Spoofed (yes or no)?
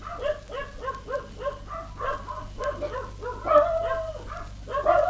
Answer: no